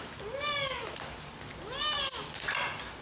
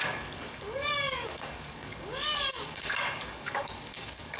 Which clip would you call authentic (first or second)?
first